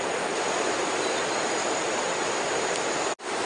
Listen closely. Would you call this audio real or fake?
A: real